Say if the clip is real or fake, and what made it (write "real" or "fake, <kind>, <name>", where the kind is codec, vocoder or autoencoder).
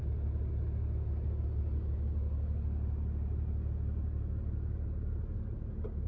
real